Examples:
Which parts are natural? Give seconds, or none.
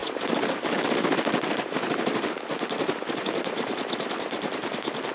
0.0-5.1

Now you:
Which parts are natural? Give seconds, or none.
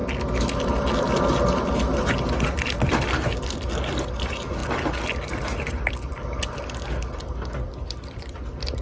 0.0-8.8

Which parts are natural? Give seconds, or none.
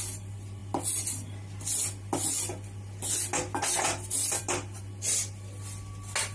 0.0-6.3